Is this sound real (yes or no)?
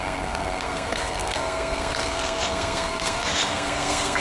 no